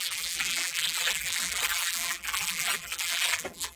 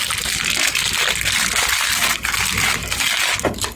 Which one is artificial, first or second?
first